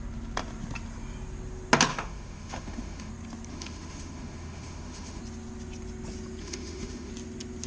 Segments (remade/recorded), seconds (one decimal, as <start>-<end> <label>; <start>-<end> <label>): 0.0-1.9 recorded; 1.9-3.1 remade; 3.1-3.5 recorded; 3.5-5.2 remade; 5.2-6.4 recorded; 6.4-7.1 remade; 7.1-7.7 recorded